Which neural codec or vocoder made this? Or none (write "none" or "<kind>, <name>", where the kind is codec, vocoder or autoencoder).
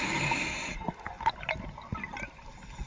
none